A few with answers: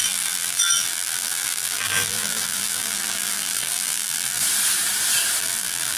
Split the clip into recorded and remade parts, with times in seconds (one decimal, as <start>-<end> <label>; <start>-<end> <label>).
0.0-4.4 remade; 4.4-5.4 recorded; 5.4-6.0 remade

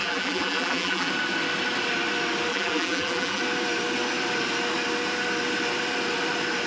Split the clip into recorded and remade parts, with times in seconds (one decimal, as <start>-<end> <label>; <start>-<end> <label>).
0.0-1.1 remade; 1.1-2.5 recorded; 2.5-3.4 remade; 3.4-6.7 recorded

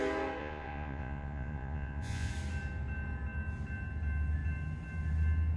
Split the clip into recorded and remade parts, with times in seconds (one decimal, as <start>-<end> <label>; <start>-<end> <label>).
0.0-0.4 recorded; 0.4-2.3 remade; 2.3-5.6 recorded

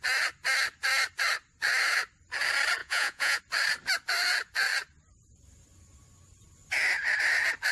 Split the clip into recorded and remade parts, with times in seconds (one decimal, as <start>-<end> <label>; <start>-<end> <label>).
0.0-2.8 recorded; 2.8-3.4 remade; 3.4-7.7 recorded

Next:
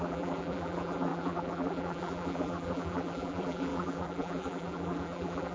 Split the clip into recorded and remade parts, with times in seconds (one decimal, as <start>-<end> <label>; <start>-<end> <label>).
0.0-5.5 remade

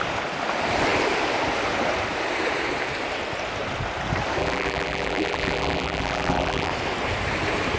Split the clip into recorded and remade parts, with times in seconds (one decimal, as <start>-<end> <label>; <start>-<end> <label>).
0.0-4.4 recorded; 4.4-6.7 remade; 6.7-7.8 recorded